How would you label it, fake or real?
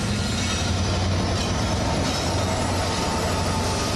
real